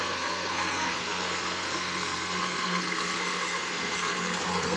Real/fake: fake